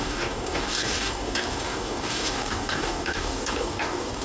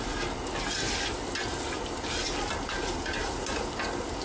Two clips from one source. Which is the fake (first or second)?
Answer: first